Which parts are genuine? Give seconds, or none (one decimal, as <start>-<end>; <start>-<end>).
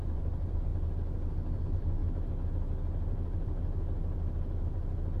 0.7-1.6; 2.0-5.2